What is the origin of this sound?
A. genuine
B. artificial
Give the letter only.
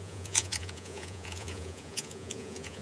B